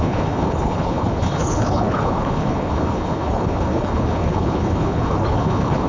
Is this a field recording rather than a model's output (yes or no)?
no